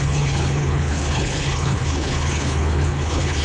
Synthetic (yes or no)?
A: yes